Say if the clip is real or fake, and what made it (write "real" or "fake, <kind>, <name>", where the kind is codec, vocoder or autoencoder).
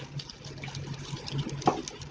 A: real